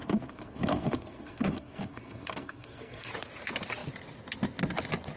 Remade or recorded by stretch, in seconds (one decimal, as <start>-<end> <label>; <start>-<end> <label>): 0.0-3.1 remade; 3.1-5.2 recorded